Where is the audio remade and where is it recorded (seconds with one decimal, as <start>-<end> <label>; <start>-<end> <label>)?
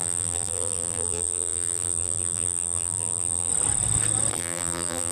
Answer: 0.0-3.5 remade; 3.5-4.3 recorded; 4.3-5.1 remade